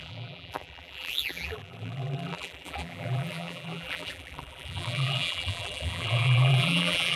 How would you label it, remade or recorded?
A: remade